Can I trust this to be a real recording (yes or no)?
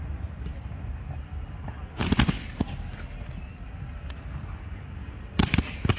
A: yes